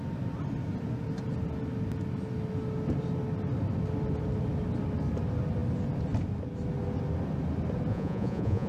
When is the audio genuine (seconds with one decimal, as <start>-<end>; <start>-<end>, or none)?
0.0-7.9